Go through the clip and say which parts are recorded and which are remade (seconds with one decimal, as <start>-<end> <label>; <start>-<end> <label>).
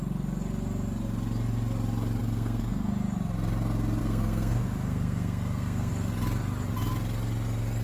0.0-2.2 recorded; 2.2-2.9 remade; 2.9-4.0 recorded; 4.0-5.9 remade; 5.9-7.8 recorded